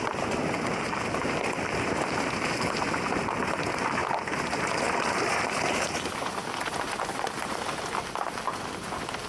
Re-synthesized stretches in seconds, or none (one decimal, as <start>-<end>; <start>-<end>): none